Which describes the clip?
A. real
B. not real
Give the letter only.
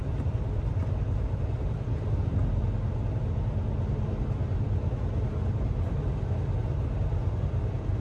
A